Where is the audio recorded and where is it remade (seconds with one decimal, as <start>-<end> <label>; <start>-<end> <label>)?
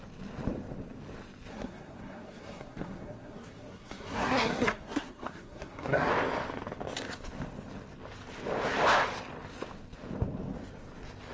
0.0-1.5 recorded; 1.5-6.1 remade; 6.1-11.3 recorded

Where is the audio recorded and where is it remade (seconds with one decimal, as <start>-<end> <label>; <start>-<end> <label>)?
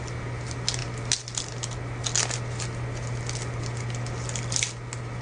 0.0-5.2 recorded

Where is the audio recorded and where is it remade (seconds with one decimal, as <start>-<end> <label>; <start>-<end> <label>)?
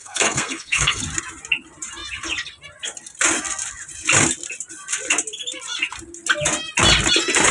0.0-1.0 remade; 1.0-7.5 recorded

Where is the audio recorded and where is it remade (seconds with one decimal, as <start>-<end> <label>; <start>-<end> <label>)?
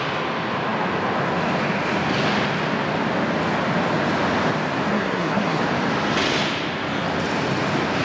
0.0-4.9 recorded; 4.9-5.6 remade; 5.6-8.0 recorded